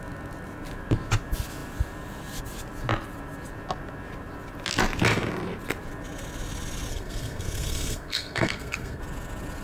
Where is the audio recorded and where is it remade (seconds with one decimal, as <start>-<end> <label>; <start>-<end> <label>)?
0.0-6.9 recorded; 6.9-9.0 remade; 9.0-9.6 recorded